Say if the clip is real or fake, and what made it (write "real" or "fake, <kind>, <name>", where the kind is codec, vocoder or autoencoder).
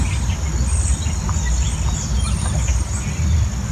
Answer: real